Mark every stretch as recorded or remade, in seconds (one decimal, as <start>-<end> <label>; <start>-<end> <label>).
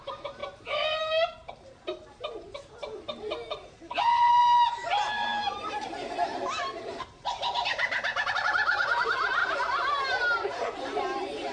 0.0-4.4 remade; 4.4-5.8 recorded; 5.8-9.4 remade; 9.4-10.0 recorded; 10.0-11.5 remade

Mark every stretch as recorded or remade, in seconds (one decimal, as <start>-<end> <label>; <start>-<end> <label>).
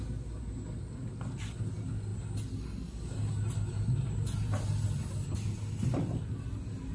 0.0-6.9 recorded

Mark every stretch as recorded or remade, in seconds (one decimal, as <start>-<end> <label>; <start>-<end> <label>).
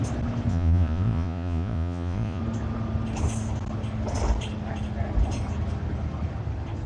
0.0-0.5 recorded; 0.5-2.4 remade; 2.4-6.9 recorded